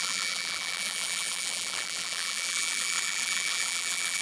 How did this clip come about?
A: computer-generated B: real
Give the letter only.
A